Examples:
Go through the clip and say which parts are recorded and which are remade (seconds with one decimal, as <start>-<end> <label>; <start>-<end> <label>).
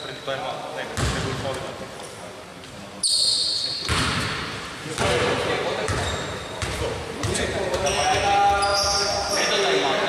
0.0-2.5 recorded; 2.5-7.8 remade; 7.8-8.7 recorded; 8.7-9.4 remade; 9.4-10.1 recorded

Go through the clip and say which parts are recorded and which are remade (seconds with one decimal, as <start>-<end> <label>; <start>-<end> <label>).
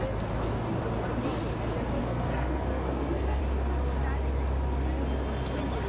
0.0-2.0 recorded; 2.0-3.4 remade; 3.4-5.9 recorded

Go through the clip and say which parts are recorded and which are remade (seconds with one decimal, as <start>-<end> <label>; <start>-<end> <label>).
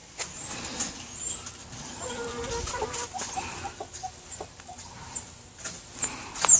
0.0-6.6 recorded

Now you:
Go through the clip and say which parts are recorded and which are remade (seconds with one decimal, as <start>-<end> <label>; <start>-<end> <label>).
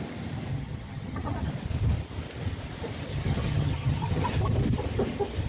0.0-0.5 recorded; 0.5-1.5 remade; 1.5-3.1 recorded; 3.1-4.4 remade; 4.4-5.5 recorded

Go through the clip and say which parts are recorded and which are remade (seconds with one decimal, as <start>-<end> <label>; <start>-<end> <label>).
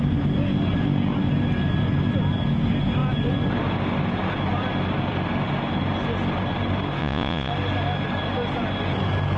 0.0-7.0 recorded; 7.0-7.5 remade; 7.5-9.4 recorded